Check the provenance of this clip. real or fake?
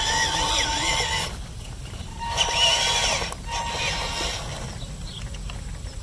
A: real